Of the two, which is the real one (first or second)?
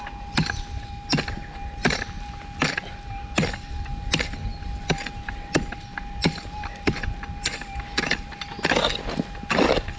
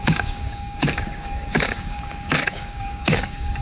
first